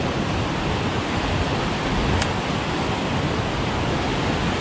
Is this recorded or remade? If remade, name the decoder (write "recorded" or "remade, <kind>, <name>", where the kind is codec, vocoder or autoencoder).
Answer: recorded